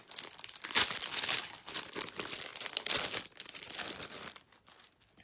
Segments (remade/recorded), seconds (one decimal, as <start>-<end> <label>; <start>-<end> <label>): 0.0-1.1 recorded; 1.1-1.7 remade; 1.7-5.2 recorded